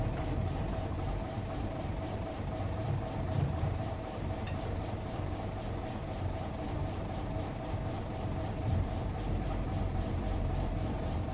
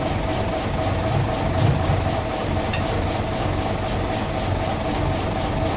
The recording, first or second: second